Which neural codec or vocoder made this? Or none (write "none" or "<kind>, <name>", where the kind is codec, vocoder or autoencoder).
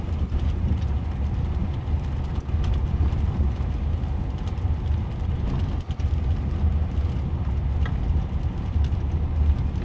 none